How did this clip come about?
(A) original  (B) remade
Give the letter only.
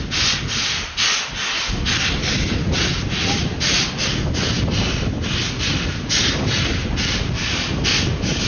A